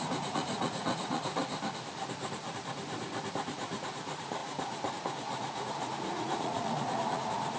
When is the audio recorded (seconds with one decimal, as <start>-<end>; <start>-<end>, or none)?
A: 1.4-3.5